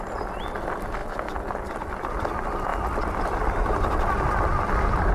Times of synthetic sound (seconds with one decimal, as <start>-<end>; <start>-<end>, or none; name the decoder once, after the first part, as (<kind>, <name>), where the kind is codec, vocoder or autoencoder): none